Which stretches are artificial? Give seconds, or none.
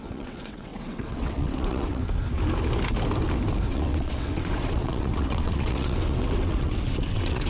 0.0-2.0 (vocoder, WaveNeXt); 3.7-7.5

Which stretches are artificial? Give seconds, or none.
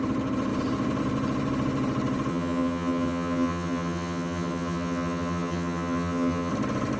2.3-6.5 (vocoder, HiFi-GAN)